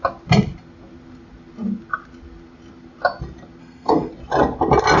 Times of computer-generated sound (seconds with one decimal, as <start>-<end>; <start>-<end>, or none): 3.6-4.1